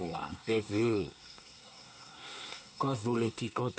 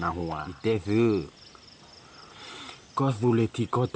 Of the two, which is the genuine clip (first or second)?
second